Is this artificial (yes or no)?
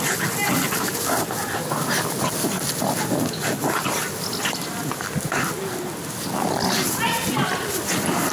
no